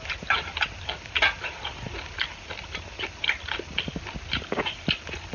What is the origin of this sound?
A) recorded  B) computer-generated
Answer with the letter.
A